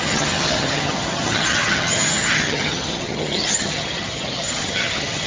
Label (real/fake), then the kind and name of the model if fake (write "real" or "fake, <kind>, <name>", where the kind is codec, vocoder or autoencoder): fake, vocoder, HiFi-GAN